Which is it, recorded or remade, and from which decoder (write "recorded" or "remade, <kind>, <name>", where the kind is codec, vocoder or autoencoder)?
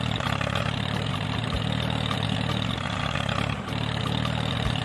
remade, vocoder, BigVGAN v2